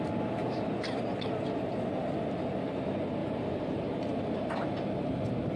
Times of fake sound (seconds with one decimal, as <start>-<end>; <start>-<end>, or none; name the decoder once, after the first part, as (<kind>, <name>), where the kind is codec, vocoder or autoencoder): 0.4-1.0 (vocoder, BigVGAN v2); 3.2-5.0